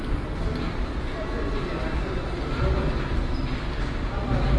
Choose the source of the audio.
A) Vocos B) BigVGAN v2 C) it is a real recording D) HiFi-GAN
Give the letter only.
C